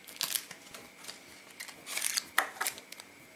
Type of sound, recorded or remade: recorded